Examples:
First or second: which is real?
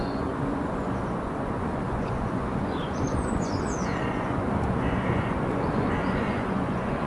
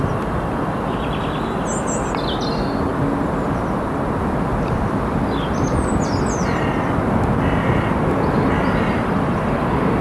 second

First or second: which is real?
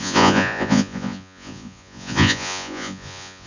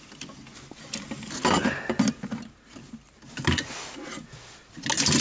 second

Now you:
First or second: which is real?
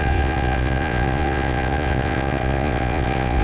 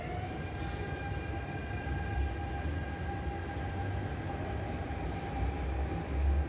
second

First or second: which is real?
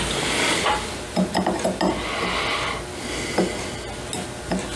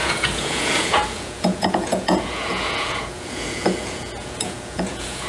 first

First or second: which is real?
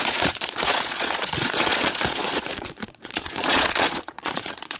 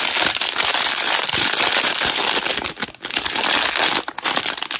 second